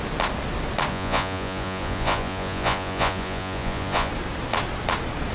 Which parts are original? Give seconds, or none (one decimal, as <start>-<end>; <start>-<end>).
0.0-0.9; 4.1-5.3